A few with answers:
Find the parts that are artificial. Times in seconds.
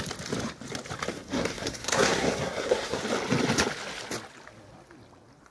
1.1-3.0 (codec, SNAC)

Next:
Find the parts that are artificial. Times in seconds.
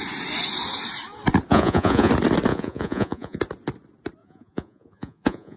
1.5-2.1 (vocoder, Vocos); 2.5-3.4; 4.2-5.6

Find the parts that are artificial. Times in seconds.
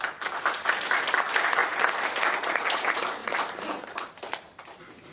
none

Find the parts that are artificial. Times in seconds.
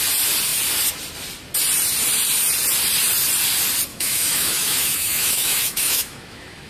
3.9-6.7 (autoencoder, DAC-VAE)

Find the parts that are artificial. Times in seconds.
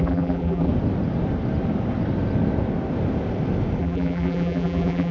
0.0-0.7 (vocoder, BigVGAN v2); 3.8-5.1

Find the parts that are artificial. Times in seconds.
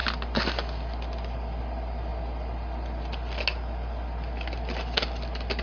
none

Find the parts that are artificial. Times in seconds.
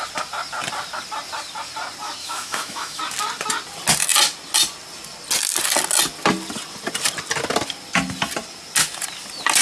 2.2-3.0 (autoencoder, DAC-VAE)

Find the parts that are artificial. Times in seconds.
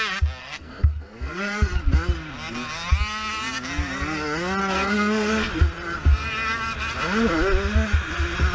0.4-1.8 (codec, SNAC); 4.6-5.5